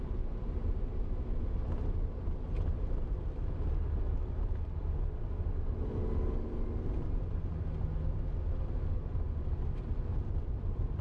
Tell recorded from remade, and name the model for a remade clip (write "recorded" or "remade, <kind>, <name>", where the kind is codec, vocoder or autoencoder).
recorded